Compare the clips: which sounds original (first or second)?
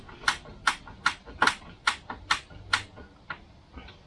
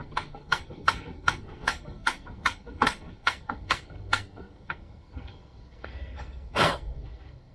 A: first